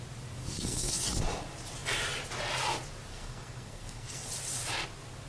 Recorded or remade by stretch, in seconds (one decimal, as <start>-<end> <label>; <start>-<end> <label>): 0.0-0.4 recorded; 0.4-1.2 remade; 1.2-3.1 recorded; 3.1-4.3 remade; 4.3-5.3 recorded